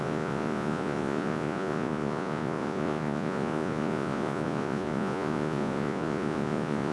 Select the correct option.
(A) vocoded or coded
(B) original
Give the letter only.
A